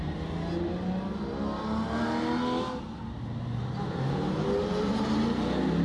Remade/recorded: recorded